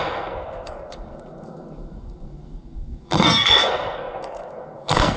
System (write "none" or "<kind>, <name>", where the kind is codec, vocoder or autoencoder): codec, SNAC